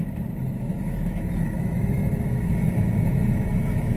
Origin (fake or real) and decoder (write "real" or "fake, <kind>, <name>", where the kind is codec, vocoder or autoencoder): fake, autoencoder, DAC-VAE